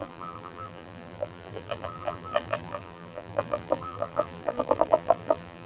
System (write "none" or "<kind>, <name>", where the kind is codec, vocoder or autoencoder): vocoder, BigVGAN v2